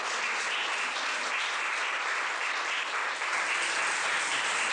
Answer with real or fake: real